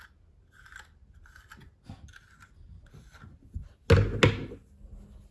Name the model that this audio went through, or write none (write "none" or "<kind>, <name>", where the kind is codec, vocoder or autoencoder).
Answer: none